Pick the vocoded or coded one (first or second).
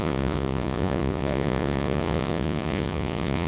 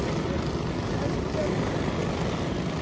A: first